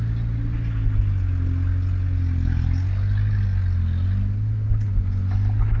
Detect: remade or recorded recorded